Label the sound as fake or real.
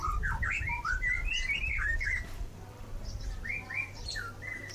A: fake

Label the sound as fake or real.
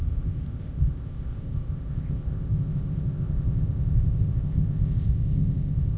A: fake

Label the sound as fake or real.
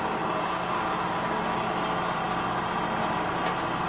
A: real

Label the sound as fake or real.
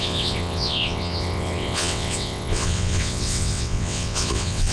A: fake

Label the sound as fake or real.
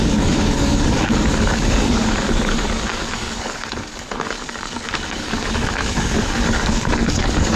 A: fake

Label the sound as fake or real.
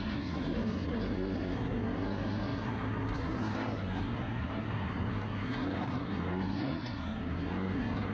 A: fake